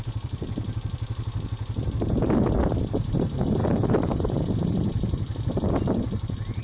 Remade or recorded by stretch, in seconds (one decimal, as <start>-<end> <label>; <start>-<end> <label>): 0.0-6.6 remade